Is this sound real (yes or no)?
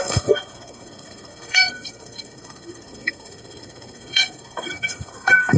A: no